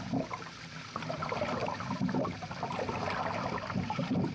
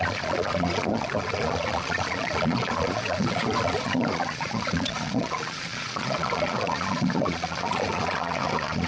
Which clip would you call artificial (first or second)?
second